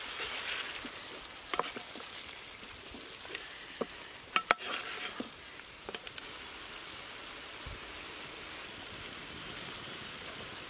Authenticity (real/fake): real